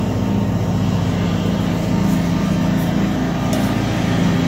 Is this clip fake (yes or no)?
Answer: no